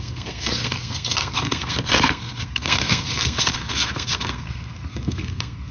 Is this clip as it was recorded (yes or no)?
no